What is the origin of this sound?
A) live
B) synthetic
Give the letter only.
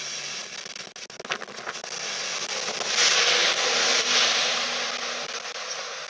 A